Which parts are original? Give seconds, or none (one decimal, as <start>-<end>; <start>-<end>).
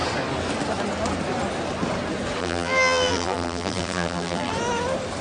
0.0-2.4; 4.5-5.2